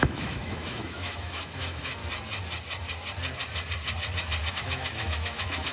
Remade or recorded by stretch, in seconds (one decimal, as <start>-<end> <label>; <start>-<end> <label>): 0.0-2.0 remade; 2.0-4.5 recorded; 4.5-5.7 remade